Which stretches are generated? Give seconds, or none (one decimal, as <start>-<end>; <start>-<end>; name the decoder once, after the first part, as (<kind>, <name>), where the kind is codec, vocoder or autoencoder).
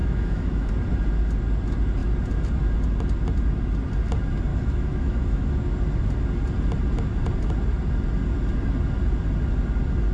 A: 0.0-0.7 (autoencoder, DAC-VAE); 4.5-5.5